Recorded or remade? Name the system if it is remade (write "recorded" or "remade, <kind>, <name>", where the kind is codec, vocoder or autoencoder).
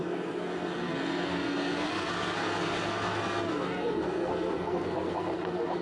remade, codec, SNAC